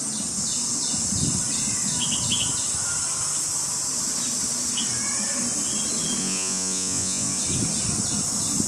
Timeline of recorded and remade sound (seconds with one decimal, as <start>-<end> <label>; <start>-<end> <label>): 0.0-6.2 recorded; 6.2-7.4 remade; 7.4-8.7 recorded